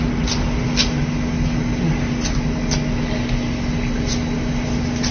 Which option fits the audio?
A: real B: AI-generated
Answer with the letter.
A